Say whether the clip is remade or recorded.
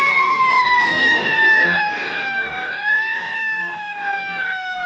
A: remade